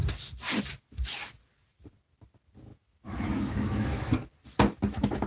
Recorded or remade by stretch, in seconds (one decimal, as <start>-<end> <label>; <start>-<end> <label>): 0.0-2.7 recorded; 2.7-4.1 remade; 4.1-5.3 recorded